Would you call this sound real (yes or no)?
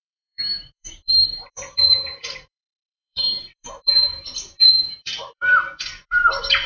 no